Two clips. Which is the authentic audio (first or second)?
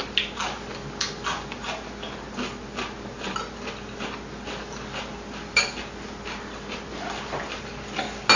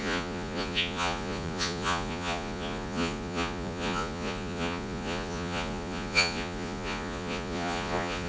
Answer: first